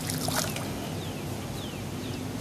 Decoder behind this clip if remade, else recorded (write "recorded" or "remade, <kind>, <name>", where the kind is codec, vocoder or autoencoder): recorded